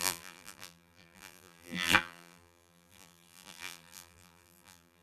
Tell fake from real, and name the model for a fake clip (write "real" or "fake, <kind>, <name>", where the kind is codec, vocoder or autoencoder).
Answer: fake, vocoder, BigVGAN v2